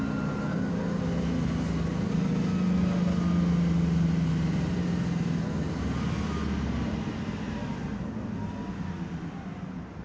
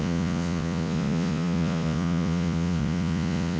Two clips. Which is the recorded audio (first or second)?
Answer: first